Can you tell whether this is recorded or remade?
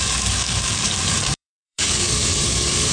remade